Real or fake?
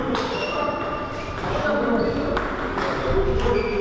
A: real